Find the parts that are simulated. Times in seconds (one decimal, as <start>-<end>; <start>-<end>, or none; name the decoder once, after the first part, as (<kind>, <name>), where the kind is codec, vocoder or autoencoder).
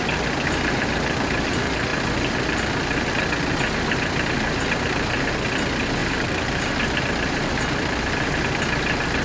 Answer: 6.0-7.0 (vocoder, BigVGAN v2)